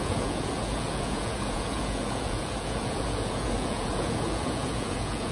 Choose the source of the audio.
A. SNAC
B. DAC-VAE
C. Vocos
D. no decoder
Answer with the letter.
C